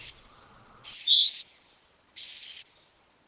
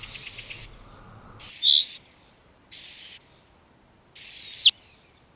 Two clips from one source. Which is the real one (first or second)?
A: second